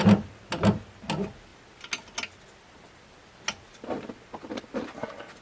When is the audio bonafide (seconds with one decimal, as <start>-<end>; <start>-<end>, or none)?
0.0-5.4